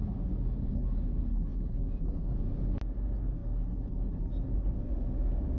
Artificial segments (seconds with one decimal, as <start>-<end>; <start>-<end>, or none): 1.5-2.8